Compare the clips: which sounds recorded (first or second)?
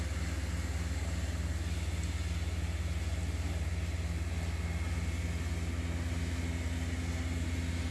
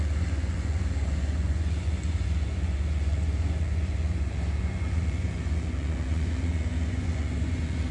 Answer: first